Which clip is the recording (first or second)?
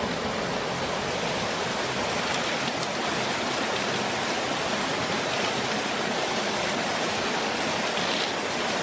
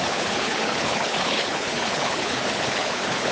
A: first